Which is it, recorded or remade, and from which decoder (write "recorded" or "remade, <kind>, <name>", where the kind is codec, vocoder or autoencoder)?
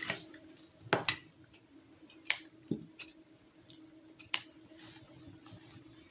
recorded